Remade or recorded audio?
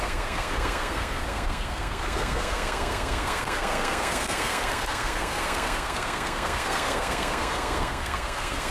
remade